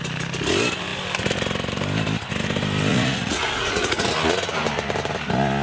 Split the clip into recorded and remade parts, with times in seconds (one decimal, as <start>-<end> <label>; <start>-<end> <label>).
0.0-2.9 recorded; 2.9-4.1 remade; 4.1-5.6 recorded